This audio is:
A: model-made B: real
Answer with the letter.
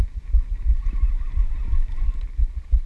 B